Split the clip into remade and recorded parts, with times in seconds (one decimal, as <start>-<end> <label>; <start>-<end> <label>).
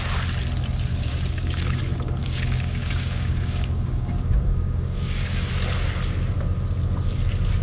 0.0-0.9 recorded; 0.9-1.8 remade; 1.8-2.2 recorded; 2.2-5.5 remade; 5.5-7.6 recorded